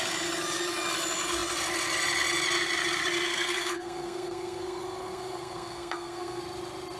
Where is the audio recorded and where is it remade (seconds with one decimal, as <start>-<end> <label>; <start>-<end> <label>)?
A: 0.0-3.3 recorded; 3.3-6.4 remade; 6.4-7.0 recorded